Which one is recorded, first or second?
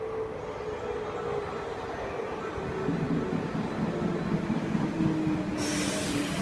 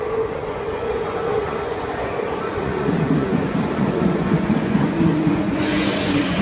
first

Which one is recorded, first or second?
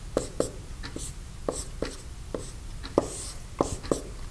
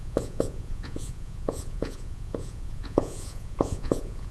first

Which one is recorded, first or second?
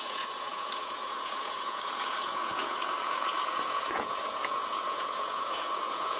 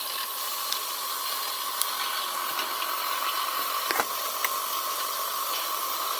second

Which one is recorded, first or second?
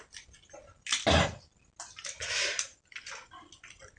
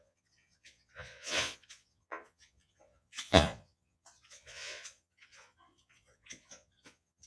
first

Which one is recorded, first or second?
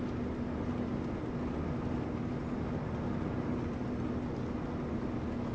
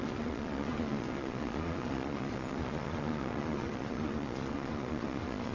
first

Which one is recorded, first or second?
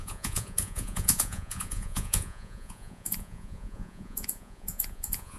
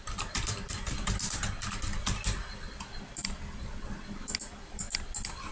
second